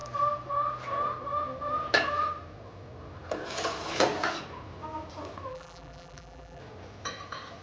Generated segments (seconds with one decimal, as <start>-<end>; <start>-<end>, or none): 5.5-6.6

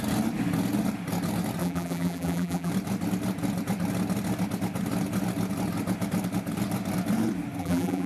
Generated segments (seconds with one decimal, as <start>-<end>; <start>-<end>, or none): 1.6-2.7; 7.6-8.1

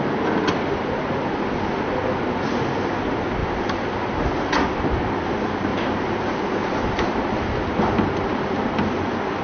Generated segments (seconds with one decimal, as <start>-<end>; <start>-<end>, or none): 3.4-4.3; 5.7-8.1

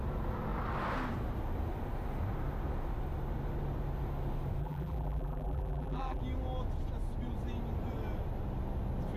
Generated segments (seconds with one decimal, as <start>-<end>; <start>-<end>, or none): 4.6-6.2

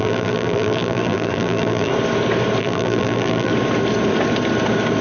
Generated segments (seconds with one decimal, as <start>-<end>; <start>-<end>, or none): 0.0-1.9; 2.6-3.5

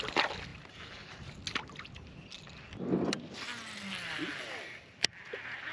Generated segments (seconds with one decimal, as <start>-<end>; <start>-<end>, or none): none

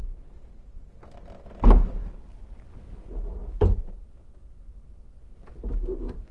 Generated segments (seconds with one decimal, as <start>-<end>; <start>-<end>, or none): 0.0-0.9

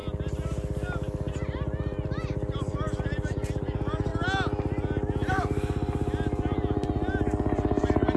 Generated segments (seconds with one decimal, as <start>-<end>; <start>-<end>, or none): 1.3-4.1; 5.3-8.2